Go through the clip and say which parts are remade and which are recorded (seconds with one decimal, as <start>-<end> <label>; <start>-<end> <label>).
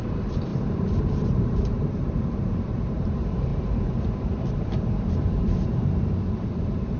0.0-7.0 remade